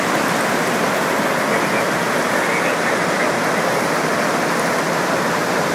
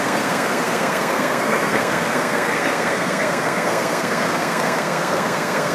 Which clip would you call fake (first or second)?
second